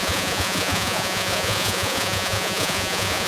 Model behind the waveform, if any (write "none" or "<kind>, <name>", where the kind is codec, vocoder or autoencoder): vocoder, Vocos